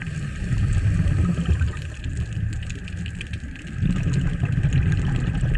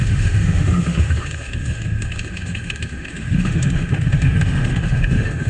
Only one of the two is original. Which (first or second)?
first